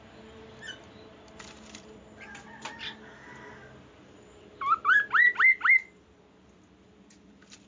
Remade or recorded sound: recorded